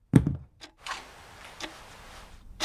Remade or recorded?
remade